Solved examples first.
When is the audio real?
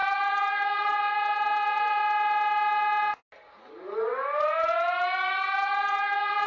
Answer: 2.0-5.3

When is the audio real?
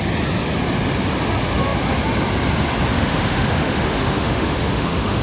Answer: 0.0-2.9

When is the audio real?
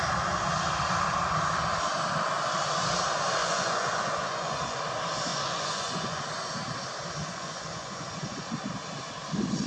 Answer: 0.0-3.4; 4.8-5.3; 6.2-7.2; 8.5-9.7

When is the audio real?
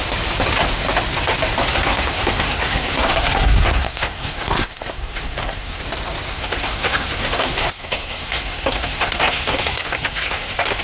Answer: 0.0-1.7; 5.8-6.3